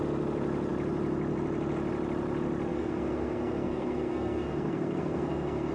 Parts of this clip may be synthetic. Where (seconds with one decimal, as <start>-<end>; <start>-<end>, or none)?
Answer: 2.7-5.7